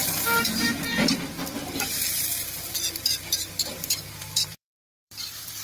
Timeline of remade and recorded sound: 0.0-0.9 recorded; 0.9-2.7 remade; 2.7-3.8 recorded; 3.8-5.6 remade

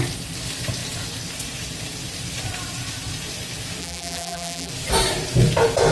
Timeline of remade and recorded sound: 0.0-3.8 recorded; 3.8-4.7 remade; 4.7-5.9 recorded

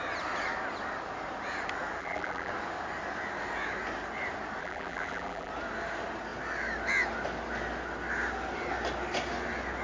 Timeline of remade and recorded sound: 0.0-2.0 recorded; 2.0-2.5 remade; 2.5-4.6 recorded; 4.6-5.5 remade; 5.5-9.8 recorded

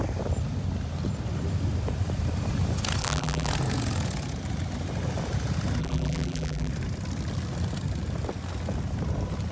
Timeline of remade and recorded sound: 0.0-3.0 recorded; 3.0-3.5 remade; 3.5-5.8 recorded; 5.8-6.7 remade; 6.7-9.5 recorded

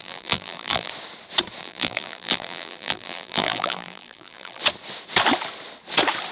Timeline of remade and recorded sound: 0.0-0.9 remade; 0.9-1.6 recorded; 1.6-4.6 remade; 4.6-6.3 recorded

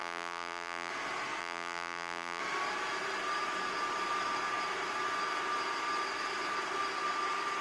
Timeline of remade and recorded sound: 0.0-0.9 remade; 0.9-1.4 recorded; 1.4-2.4 remade; 2.4-7.6 recorded